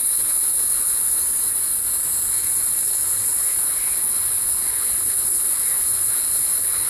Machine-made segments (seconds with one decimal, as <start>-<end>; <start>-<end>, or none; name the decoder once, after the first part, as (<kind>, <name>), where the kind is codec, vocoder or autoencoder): 0.0-1.2 (codec, HILCodec); 2.3-6.9